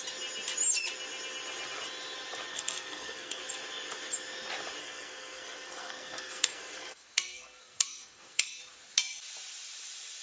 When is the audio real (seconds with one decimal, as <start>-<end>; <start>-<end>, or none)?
0.0-2.5; 3.4-4.8; 8.6-10.2